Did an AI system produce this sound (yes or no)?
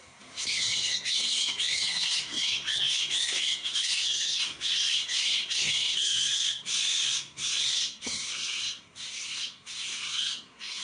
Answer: yes